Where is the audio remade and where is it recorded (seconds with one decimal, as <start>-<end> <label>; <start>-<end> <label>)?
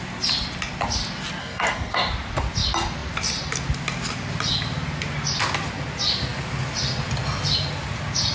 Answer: 0.0-1.4 recorded; 1.4-2.1 remade; 2.1-8.3 recorded